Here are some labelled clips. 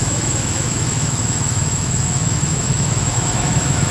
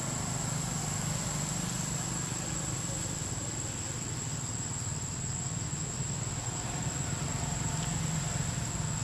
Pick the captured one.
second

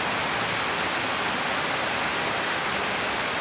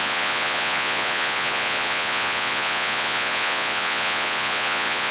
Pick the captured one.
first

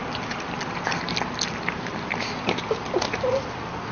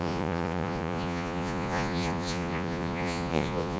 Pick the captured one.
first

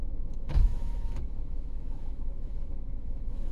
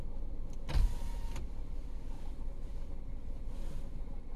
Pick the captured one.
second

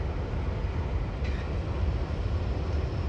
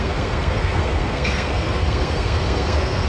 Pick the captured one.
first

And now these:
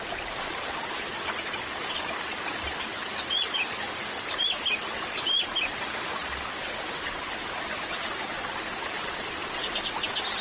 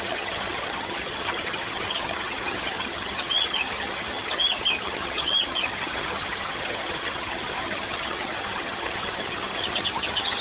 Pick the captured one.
first